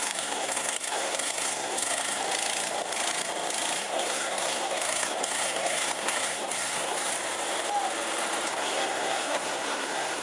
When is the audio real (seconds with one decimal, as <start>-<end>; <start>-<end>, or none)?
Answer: 2.2-3.8; 7.1-8.5